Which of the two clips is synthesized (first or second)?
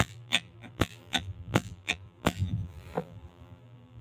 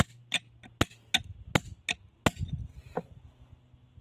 first